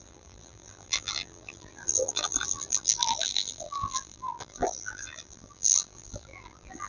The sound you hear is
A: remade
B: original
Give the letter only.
A